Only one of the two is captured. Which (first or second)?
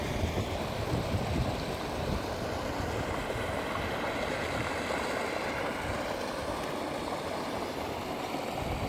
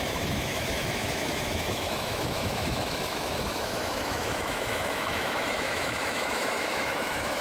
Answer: first